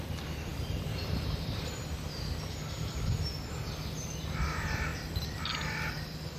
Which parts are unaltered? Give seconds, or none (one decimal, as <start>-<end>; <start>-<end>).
0.0-6.4

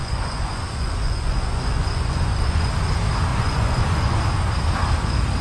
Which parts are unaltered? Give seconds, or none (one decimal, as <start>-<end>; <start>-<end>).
2.7-3.3; 4.2-5.4

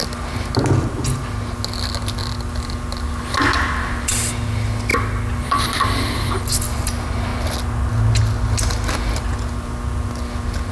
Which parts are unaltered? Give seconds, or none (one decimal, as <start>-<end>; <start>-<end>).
0.0-10.7

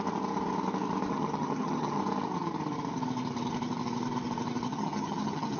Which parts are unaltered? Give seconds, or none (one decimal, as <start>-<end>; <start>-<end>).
0.0-1.1; 2.0-4.7